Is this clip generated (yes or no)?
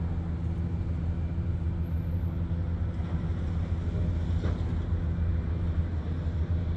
no